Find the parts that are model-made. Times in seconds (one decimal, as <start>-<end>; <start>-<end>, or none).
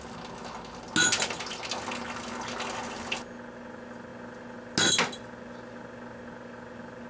none